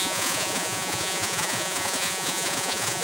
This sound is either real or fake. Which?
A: fake